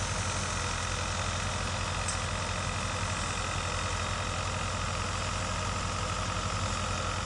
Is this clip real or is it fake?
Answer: real